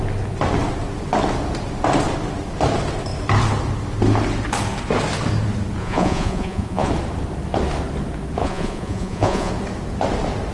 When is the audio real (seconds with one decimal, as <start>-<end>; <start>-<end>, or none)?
0.0-5.8; 6.9-8.4; 9.5-10.5